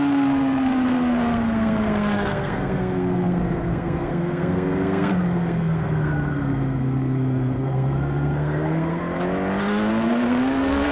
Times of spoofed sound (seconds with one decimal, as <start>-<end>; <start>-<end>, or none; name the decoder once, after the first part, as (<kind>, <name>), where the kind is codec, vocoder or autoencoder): 0.0-9.0 (codec, SNAC); 9.9-10.9